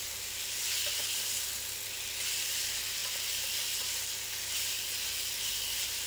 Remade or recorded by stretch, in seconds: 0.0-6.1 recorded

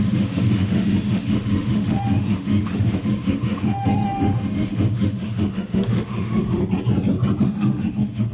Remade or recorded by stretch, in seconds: 0.0-6.6 remade; 6.6-7.4 recorded; 7.4-8.3 remade

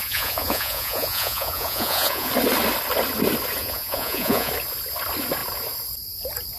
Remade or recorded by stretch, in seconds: 0.0-2.3 remade; 2.3-3.6 recorded; 3.6-4.5 remade; 4.5-6.6 recorded

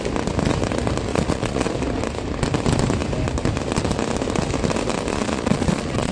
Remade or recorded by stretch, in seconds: 0.0-1.1 recorded; 1.1-1.7 remade; 1.7-5.1 recorded; 5.1-6.1 remade

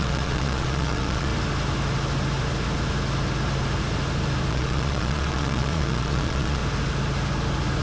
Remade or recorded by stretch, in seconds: 0.0-1.3 remade; 1.3-4.5 recorded; 4.5-6.6 remade; 6.6-7.8 recorded

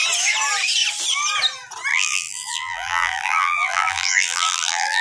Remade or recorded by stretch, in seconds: 0.0-1.9 recorded; 1.9-5.0 remade